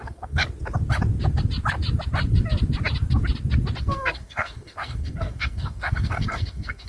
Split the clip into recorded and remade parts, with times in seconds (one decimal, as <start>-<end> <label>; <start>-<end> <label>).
0.0-0.4 remade; 0.4-3.8 recorded; 3.8-6.9 remade